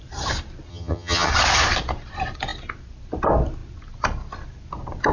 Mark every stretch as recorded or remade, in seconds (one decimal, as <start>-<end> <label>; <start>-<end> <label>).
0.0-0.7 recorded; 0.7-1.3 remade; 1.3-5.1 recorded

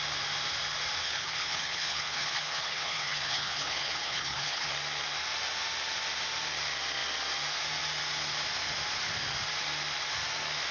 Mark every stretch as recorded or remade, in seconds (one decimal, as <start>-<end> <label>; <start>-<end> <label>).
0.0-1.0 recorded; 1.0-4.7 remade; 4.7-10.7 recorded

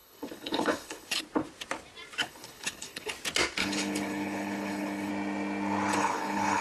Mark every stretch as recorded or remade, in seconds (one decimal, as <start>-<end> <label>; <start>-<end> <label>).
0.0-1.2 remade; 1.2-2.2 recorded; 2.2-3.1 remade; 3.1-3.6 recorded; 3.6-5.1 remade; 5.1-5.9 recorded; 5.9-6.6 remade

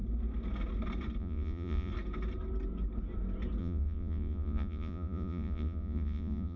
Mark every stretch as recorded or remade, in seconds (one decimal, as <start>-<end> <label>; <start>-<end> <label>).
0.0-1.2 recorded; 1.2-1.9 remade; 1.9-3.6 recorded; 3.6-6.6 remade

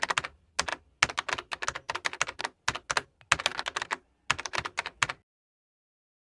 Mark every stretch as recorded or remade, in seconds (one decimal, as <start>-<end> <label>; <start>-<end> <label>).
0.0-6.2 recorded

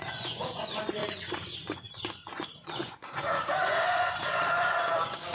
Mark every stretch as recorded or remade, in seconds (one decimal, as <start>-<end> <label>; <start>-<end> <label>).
0.0-5.3 remade

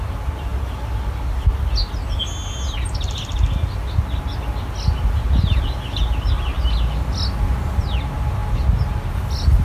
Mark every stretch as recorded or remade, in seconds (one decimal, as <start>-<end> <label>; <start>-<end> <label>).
0.0-9.6 recorded

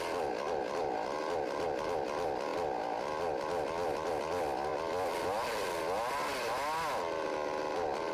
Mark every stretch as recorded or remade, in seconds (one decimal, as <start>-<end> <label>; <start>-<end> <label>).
0.0-8.1 recorded